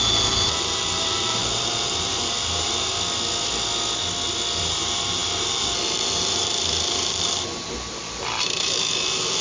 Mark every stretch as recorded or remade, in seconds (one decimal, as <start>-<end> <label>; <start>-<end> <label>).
0.0-2.9 remade; 2.9-4.6 recorded; 4.6-9.4 remade

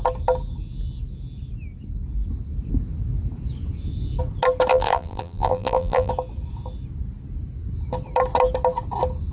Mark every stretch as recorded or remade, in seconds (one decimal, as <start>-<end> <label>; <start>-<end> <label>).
0.0-4.7 recorded; 4.7-6.1 remade; 6.1-9.3 recorded

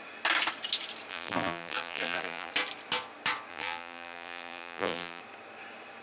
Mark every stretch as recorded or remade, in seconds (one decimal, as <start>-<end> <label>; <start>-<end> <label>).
0.0-1.1 recorded; 1.1-2.5 remade; 2.5-3.5 recorded; 3.5-5.2 remade; 5.2-6.0 recorded

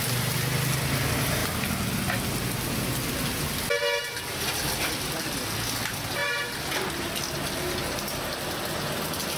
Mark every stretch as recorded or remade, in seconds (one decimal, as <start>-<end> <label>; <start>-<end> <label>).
0.0-9.4 recorded

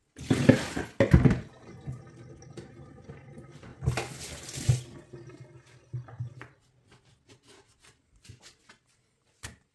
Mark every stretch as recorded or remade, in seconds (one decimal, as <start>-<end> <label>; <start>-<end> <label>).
0.0-9.7 recorded

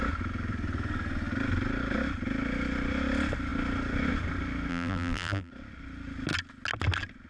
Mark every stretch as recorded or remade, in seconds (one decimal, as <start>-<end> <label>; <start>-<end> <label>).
0.0-4.7 recorded; 4.7-5.5 remade; 5.5-7.3 recorded

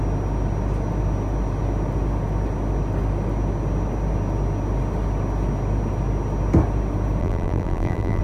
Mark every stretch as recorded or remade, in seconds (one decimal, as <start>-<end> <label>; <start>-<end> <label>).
0.0-7.2 recorded; 7.2-8.2 remade

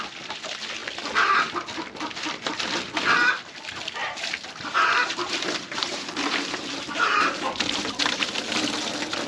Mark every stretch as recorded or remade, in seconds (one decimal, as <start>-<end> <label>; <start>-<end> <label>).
0.0-4.0 recorded; 4.0-8.4 remade; 8.4-9.3 recorded